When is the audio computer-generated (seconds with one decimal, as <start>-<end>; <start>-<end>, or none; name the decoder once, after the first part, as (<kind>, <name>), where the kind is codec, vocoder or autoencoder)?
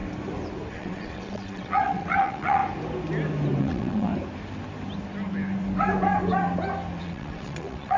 0.7-2.6 (vocoder, WaveNeXt); 3.6-4.1; 7.0-8.0